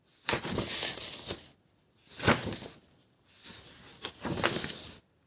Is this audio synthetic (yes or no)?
no